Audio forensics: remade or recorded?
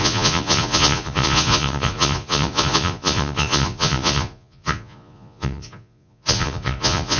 remade